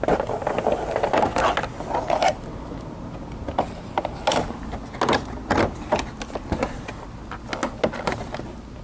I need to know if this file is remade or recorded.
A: recorded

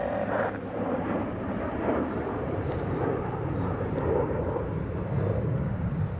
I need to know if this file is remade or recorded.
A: remade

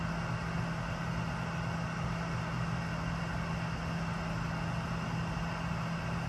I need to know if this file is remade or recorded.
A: recorded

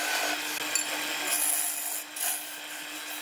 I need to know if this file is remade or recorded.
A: recorded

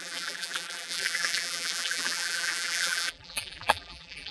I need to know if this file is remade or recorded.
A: remade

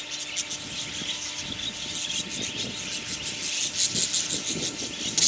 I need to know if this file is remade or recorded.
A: recorded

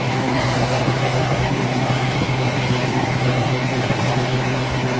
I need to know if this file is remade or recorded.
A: remade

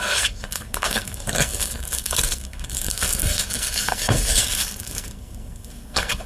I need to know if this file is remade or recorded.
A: remade